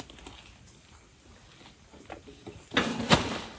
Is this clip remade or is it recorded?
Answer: recorded